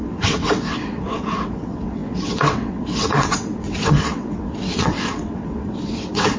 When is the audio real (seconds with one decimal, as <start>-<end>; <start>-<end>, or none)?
none